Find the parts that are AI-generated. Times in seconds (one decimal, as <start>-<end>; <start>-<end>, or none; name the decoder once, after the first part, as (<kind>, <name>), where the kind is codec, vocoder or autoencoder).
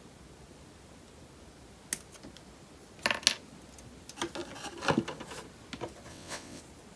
6.1-6.6 (vocoder, WaveNeXt)